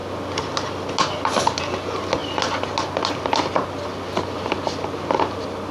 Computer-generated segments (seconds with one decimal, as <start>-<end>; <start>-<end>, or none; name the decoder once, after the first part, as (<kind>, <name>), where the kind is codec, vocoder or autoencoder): none